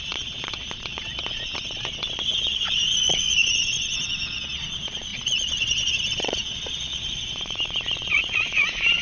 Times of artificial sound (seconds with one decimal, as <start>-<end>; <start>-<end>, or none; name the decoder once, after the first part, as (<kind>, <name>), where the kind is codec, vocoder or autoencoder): 0.0-9.0 (vocoder, Vocos)